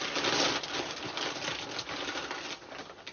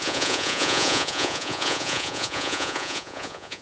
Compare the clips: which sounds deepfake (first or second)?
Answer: second